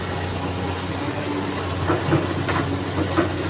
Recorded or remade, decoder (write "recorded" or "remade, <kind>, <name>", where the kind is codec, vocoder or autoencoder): recorded